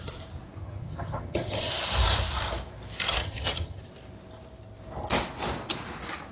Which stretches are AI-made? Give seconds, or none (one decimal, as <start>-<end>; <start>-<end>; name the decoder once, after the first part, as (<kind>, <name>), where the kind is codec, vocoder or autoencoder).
0.6-1.7 (vocoder, HiFi-GAN); 3.2-3.8